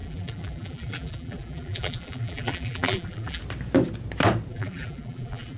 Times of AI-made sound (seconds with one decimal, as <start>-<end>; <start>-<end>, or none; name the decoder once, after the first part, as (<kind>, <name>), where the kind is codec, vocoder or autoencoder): 0.0-3.4 (vocoder, BigVGAN v2); 4.5-5.6